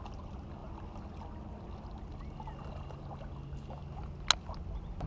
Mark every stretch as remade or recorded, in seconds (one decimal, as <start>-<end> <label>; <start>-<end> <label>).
0.0-5.1 recorded